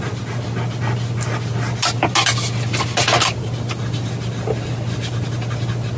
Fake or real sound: real